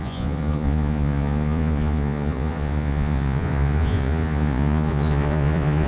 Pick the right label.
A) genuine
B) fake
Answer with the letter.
B